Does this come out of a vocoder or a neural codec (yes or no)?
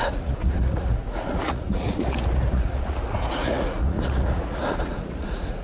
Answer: yes